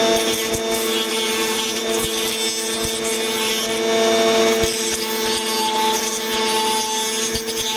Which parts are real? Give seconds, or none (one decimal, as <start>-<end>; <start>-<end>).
0.0-1.1; 1.8-7.8